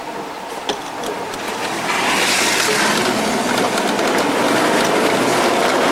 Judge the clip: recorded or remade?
recorded